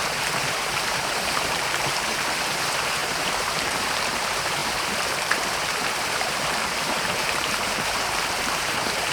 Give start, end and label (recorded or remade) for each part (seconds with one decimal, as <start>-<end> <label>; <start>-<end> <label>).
0.0-9.1 remade